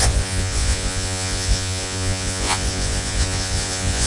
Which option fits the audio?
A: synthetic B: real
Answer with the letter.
A